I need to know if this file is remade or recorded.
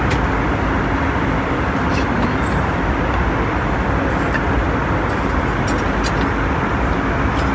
recorded